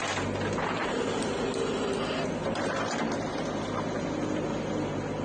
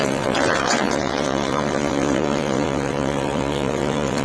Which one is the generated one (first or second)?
second